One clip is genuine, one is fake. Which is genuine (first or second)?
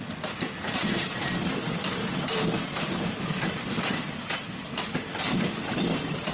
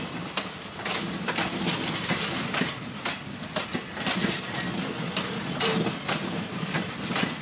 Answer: second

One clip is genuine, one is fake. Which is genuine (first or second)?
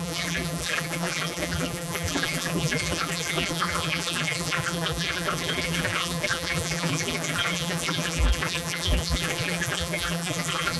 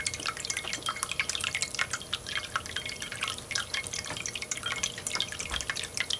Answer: second